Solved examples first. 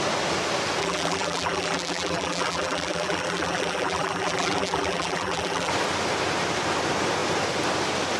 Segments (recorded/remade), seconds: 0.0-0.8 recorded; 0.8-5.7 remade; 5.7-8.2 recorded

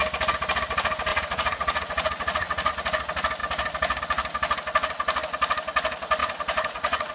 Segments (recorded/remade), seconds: 0.0-1.1 recorded; 1.1-2.7 remade; 2.7-6.2 recorded; 6.2-7.1 remade

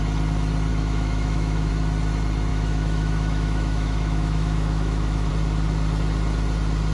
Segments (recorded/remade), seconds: 0.0-0.7 recorded; 0.7-1.7 remade; 1.7-2.5 recorded; 2.5-5.3 remade; 5.3-6.9 recorded

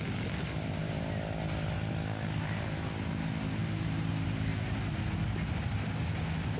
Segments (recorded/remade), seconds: 0.0-6.6 recorded

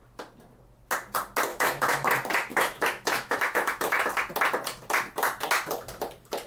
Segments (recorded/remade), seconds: 0.0-1.5 recorded; 1.5-2.1 remade; 2.1-2.5 recorded; 2.5-4.1 remade; 4.1-6.5 recorded

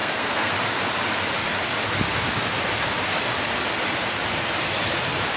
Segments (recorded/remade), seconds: 0.0-0.5 remade; 0.5-5.4 recorded

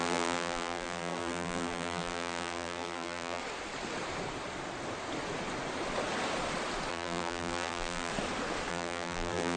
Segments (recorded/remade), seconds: 0.0-3.4 remade; 3.4-6.9 recorded; 6.9-8.1 remade; 8.1-8.7 recorded; 8.7-9.6 remade